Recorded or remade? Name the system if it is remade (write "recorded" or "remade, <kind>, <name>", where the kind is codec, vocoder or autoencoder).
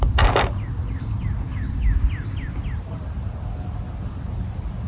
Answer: recorded